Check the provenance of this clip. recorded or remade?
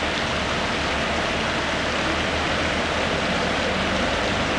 recorded